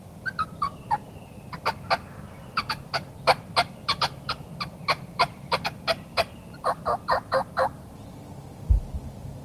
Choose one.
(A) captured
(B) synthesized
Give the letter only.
B